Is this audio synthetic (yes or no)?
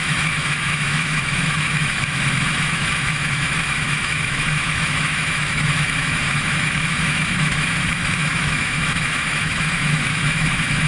yes